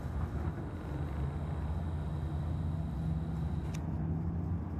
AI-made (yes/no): no